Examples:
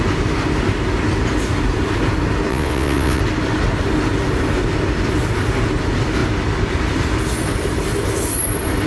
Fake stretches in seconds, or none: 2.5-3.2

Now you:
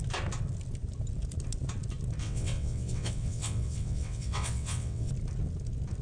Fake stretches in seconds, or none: 2.2-5.1

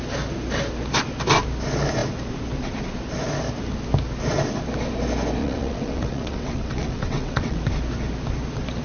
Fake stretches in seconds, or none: 5.4-7.6

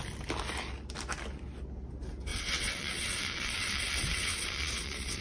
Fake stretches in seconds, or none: 2.3-5.2